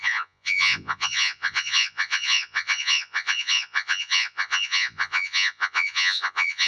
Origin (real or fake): fake